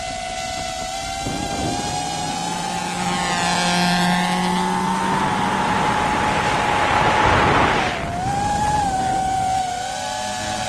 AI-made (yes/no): no